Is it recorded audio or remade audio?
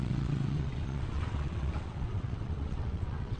remade